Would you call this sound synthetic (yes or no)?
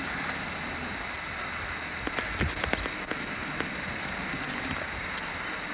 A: no